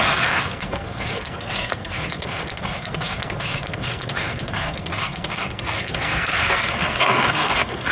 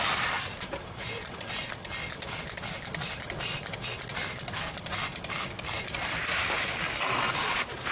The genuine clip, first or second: second